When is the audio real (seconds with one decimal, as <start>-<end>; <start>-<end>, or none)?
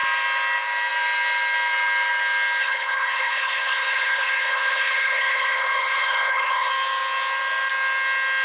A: 0.0-2.6; 6.7-8.4